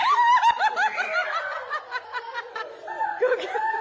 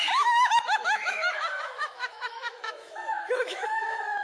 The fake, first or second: second